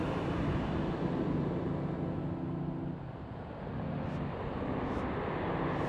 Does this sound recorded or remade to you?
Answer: recorded